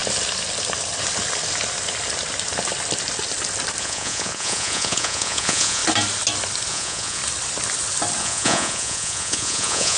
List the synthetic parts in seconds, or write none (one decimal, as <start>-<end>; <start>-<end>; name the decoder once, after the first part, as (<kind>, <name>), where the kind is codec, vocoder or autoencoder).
3.8-5.8 (vocoder, Vocos); 6.7-7.2; 8.2-10.0